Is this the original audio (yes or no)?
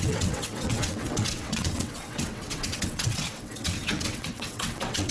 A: no